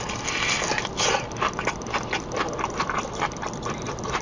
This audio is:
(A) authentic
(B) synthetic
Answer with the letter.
A